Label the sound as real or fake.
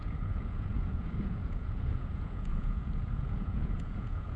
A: fake